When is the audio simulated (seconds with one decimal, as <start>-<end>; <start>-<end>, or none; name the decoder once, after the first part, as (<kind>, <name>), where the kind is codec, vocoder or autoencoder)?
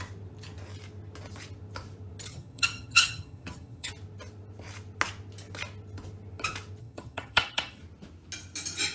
2.3-3.9 (vocoder, HiFi-GAN); 6.8-7.8